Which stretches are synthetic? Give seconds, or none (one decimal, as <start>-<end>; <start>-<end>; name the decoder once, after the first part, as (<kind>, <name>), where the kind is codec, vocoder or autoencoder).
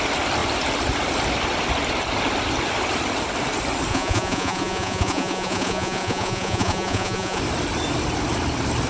3.9-7.4 (vocoder, Vocos)